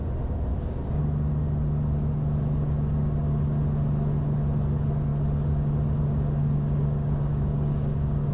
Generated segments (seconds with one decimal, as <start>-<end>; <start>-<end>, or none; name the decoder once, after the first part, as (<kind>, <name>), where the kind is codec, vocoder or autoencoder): 0.5-1.0 (codec, DAC); 6.4-8.3